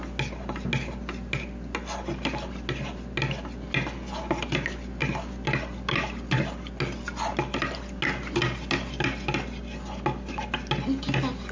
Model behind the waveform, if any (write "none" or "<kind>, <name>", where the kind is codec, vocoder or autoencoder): none